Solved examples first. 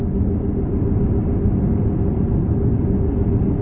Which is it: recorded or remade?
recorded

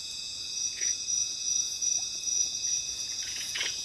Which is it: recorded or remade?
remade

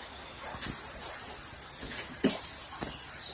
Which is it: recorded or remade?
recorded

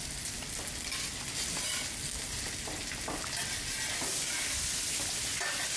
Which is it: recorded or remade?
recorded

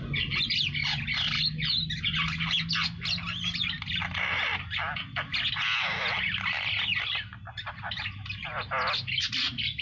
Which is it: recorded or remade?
recorded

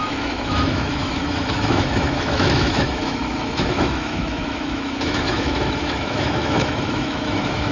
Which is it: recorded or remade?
remade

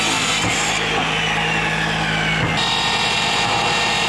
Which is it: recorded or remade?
recorded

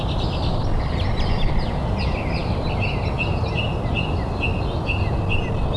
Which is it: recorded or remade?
recorded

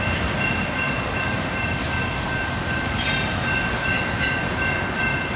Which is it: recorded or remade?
recorded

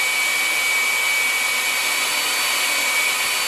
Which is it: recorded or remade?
recorded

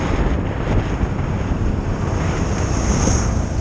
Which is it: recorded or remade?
recorded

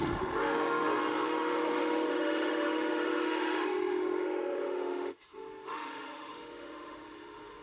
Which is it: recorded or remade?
remade